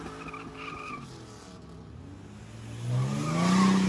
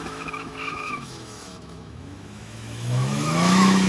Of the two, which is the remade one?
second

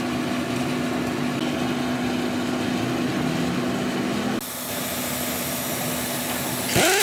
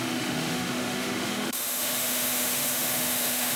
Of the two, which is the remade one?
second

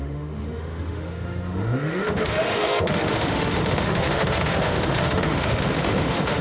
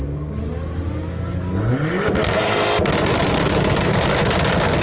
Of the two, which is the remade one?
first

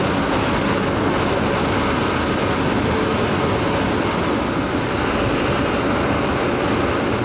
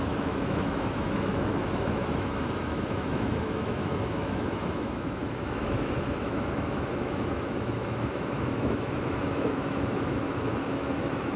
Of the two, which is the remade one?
second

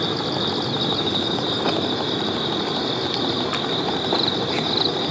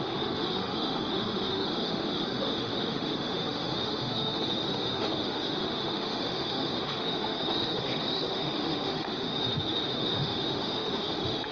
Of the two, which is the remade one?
second